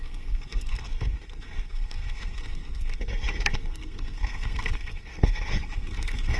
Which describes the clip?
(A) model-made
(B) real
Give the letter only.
A